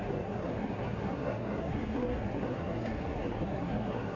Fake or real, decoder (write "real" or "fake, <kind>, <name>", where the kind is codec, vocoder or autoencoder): fake, codec, SNAC